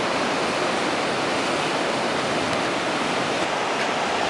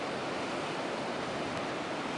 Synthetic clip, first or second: second